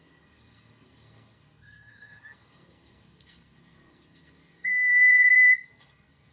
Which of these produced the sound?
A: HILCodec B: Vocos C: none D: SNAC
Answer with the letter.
D